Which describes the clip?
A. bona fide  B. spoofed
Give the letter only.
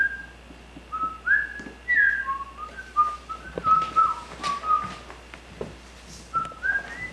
A